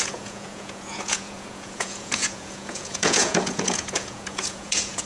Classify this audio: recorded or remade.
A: remade